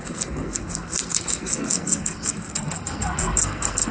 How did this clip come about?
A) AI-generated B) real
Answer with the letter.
A